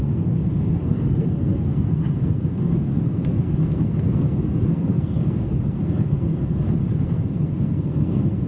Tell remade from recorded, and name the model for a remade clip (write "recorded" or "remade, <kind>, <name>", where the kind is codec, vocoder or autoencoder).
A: remade, codec, SNAC